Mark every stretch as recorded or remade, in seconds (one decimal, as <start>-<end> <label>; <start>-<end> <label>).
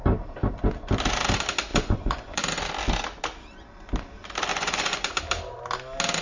0.0-1.7 recorded; 1.7-2.4 remade; 2.4-4.5 recorded; 4.5-5.2 remade; 5.2-6.2 recorded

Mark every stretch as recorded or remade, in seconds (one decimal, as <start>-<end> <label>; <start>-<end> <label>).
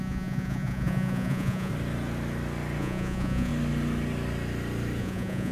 0.0-1.7 remade; 1.7-2.8 recorded; 2.8-3.5 remade; 3.5-5.0 recorded; 5.0-5.5 remade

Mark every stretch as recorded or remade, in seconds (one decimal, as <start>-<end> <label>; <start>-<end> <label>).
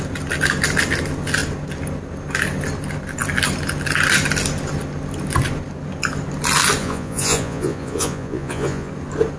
0.0-6.8 recorded; 6.8-8.9 remade; 8.9-9.4 recorded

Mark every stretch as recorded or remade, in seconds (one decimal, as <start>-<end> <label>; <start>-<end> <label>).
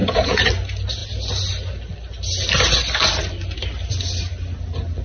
0.0-0.5 remade; 0.5-5.0 recorded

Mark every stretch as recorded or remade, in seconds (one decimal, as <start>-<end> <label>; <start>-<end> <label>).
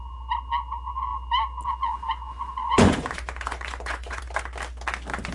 0.0-2.6 recorded; 2.6-4.2 remade; 4.2-5.3 recorded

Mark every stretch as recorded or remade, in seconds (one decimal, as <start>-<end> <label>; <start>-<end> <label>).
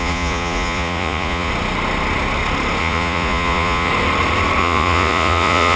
0.0-1.5 remade; 1.5-2.8 recorded; 2.8-3.9 remade; 3.9-4.6 recorded; 4.6-5.8 remade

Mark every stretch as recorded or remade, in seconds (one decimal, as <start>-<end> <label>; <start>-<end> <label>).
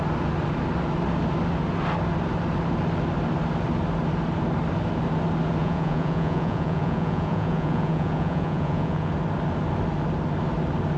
0.0-5.6 recorded; 5.6-9.1 remade; 9.1-11.0 recorded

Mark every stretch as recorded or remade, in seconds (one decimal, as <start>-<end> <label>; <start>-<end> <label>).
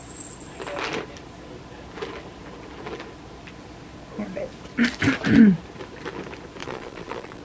0.0-6.6 recorded; 6.6-7.4 remade